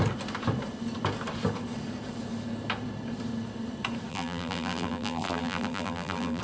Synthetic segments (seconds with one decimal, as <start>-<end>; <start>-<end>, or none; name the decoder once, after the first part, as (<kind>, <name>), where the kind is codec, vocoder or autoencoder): 4.1-6.4 (vocoder, BigVGAN v2)